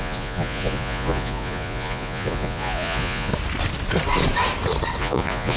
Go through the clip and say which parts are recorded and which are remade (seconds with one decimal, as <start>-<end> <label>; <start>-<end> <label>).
0.0-3.3 remade; 3.3-5.0 recorded; 5.0-5.6 remade